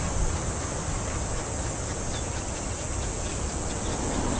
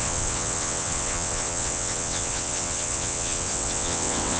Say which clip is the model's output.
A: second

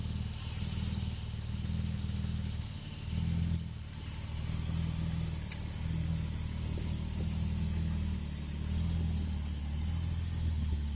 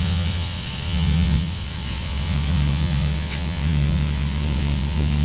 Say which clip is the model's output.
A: second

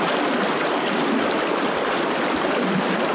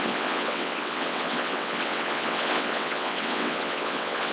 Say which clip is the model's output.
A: second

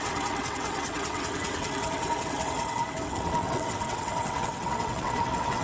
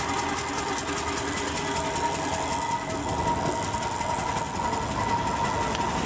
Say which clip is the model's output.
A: first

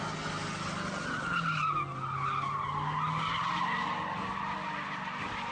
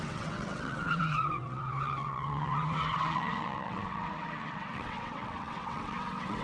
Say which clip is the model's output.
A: second